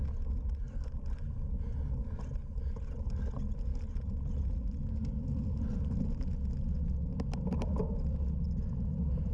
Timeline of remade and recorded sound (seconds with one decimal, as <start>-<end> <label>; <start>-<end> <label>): 0.0-9.3 recorded